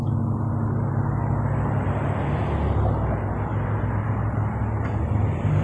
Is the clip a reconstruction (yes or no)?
no